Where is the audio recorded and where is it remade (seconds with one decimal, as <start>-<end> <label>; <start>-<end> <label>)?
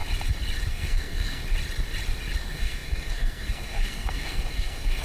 0.0-0.7 recorded; 0.7-1.4 remade; 1.4-2.4 recorded; 2.4-5.0 remade